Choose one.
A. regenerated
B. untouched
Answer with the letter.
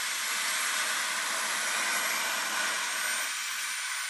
B